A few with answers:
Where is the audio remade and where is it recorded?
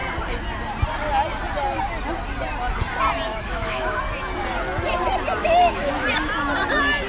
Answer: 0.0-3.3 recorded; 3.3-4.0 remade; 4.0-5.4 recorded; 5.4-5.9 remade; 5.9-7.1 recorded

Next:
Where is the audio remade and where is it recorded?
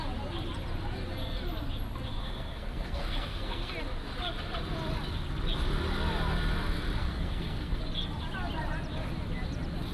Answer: 0.0-2.2 recorded; 2.2-3.7 remade; 3.7-7.0 recorded; 7.0-7.8 remade; 7.8-9.9 recorded